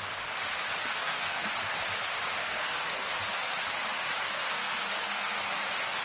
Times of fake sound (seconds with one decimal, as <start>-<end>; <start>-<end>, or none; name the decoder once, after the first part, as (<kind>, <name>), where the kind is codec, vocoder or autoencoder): 0.8-1.5 (codec, SNAC); 2.4-3.1; 4.2-5.6